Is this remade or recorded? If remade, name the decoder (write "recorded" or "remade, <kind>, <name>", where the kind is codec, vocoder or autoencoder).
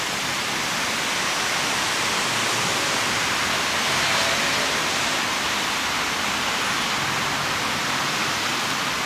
recorded